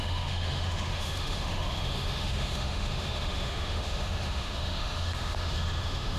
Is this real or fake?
fake